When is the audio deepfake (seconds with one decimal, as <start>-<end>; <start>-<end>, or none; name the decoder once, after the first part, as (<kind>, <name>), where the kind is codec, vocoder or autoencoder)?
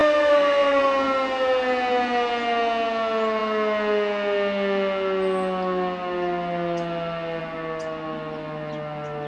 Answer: 0.0-0.8 (codec, SNAC)